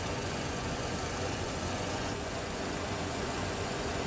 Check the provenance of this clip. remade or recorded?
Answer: remade